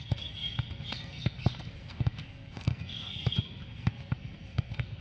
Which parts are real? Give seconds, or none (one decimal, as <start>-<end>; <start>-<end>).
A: none